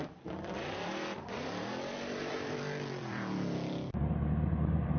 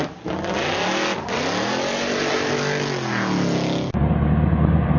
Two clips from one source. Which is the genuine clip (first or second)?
second